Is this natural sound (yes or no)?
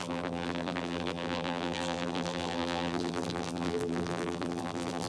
no